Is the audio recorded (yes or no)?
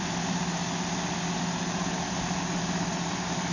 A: yes